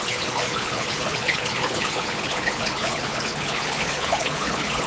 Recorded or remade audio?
remade